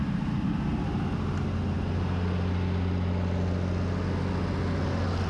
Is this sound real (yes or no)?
yes